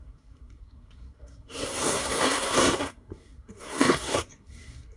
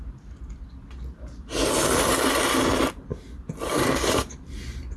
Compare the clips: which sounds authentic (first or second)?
second